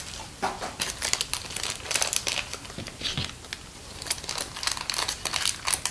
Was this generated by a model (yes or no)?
no